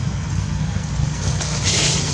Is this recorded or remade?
remade